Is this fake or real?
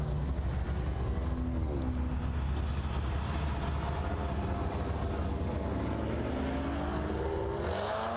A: real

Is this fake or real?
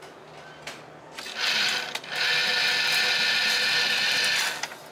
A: real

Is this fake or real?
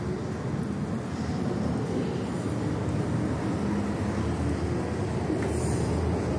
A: real